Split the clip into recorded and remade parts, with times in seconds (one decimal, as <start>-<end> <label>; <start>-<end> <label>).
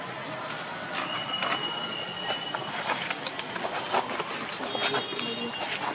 0.0-5.9 recorded